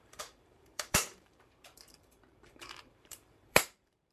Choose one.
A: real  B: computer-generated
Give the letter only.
B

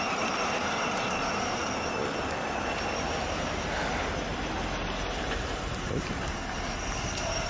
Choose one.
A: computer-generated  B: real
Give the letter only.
B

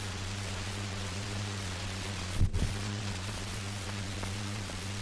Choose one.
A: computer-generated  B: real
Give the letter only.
A